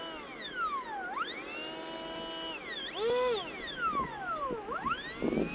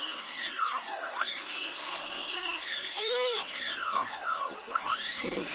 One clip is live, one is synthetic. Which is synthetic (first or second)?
second